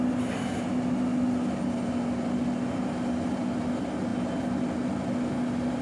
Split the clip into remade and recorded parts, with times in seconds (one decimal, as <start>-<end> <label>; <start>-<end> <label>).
0.0-5.8 recorded